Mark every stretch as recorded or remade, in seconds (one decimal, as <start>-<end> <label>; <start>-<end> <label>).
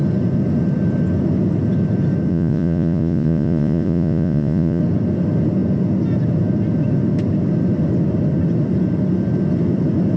0.0-2.3 recorded; 2.3-4.8 remade; 4.8-10.2 recorded